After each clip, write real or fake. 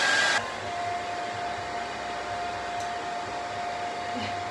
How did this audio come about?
real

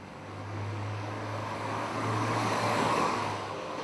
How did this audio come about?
fake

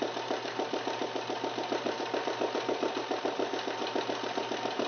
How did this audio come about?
real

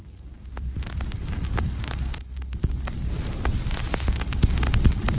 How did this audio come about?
real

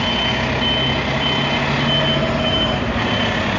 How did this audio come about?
real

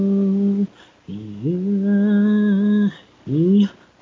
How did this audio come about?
real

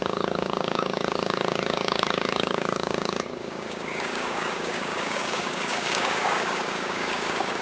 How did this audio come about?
fake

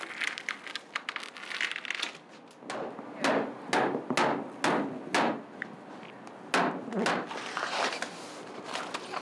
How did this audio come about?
real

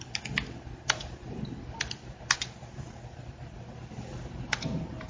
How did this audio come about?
real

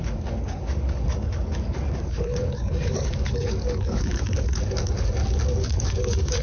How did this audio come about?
fake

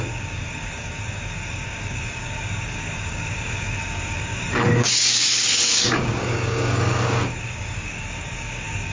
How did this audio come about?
fake